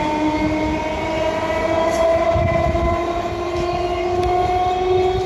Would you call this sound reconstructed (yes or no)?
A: no